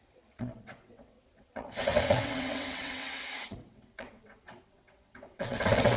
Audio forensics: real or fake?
fake